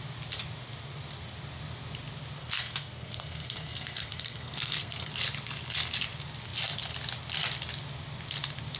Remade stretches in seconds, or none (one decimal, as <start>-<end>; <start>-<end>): 2.4-5.1